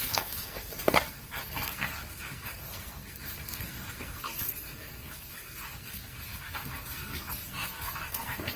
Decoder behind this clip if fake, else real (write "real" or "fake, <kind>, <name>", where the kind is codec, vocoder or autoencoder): fake, codec, SNAC